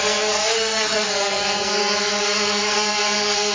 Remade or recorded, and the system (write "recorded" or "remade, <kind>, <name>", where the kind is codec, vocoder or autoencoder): remade, codec, SNAC